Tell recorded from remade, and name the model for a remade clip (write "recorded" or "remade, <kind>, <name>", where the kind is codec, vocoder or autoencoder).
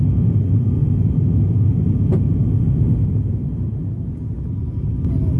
recorded